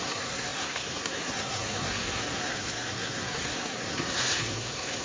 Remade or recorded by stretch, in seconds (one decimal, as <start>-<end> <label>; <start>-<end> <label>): 0.0-5.0 remade